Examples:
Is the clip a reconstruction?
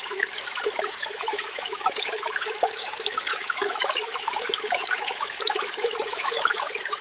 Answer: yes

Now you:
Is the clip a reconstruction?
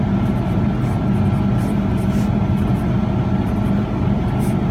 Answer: no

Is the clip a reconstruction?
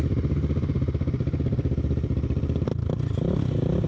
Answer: no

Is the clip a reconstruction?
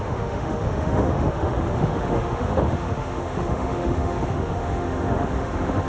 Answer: yes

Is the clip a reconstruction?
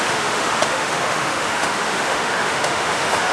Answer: yes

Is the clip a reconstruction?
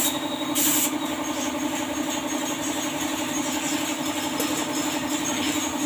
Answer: no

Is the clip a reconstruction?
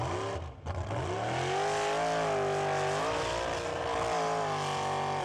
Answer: no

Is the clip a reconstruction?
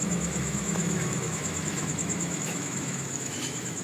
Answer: yes